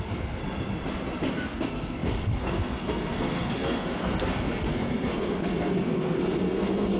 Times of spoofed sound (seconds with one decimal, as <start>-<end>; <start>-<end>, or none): 0.0-0.4; 1.3-7.0